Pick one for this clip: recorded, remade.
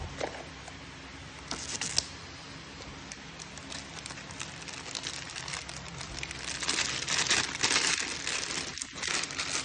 recorded